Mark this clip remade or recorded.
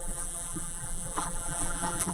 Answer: remade